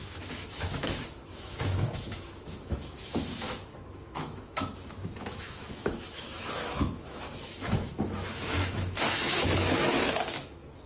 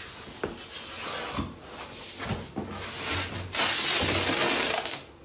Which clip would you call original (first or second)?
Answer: second